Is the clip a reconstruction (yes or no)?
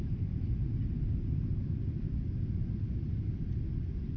no